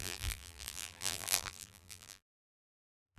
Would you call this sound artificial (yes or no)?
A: yes